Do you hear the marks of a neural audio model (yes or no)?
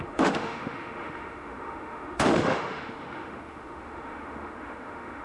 yes